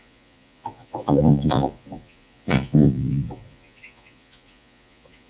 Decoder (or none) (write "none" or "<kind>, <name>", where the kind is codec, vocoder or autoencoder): vocoder, Vocos